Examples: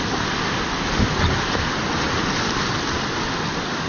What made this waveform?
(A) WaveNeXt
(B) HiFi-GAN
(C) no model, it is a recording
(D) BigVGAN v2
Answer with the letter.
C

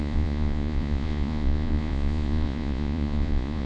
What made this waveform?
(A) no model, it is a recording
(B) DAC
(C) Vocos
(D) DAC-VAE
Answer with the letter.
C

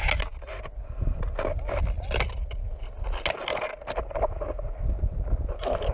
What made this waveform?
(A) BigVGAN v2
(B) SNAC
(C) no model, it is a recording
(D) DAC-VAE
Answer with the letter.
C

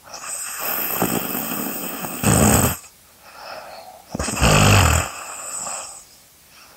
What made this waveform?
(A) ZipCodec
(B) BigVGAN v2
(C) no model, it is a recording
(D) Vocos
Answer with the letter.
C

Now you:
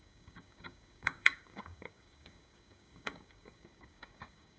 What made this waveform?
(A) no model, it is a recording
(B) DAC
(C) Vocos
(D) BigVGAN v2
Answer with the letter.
B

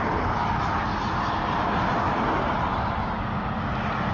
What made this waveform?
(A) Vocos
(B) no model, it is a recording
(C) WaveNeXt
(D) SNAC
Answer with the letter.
B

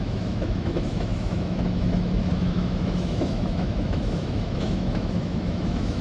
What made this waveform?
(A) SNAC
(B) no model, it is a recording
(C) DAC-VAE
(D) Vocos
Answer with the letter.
C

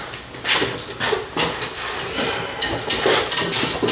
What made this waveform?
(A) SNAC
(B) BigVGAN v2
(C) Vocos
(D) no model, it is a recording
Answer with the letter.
D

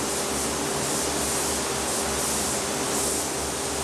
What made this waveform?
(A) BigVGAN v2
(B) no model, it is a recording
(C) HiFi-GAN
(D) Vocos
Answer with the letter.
B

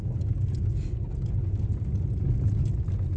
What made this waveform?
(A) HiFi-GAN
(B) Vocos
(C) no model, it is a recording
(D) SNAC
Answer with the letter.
C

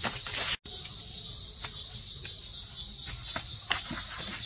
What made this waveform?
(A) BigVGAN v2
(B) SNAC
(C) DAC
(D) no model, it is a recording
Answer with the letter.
D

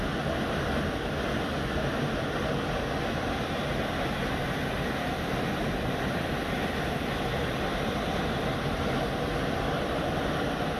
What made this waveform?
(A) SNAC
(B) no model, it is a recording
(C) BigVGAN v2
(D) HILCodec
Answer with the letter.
B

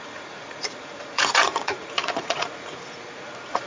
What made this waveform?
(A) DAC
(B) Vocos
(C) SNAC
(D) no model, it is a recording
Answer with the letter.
B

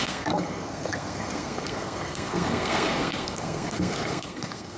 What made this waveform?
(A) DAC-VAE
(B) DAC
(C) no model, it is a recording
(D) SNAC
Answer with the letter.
D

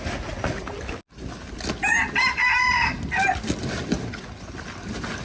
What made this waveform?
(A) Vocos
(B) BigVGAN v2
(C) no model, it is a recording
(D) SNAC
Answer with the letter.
C